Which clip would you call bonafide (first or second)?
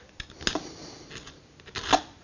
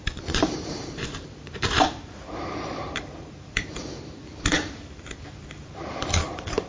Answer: first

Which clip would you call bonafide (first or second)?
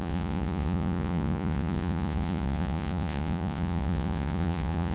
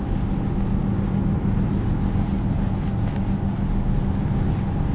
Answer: second